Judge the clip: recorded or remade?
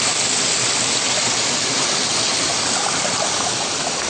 recorded